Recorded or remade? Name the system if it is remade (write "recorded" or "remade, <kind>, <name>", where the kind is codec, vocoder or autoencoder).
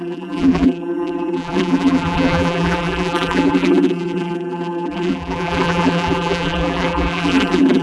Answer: remade, vocoder, BigVGAN v2